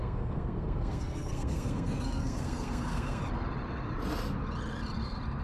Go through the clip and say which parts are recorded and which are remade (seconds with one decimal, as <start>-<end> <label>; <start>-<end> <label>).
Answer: 0.0-3.2 remade; 3.2-5.4 recorded